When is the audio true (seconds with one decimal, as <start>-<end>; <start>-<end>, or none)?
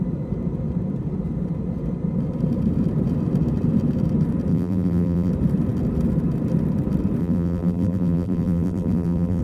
0.0-4.5; 5.3-7.2